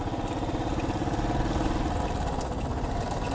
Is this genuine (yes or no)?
yes